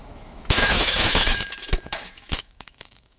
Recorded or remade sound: remade